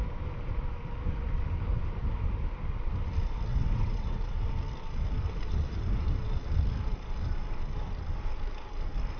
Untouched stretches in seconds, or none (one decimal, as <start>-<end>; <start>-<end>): 0.0-3.5; 4.5-9.2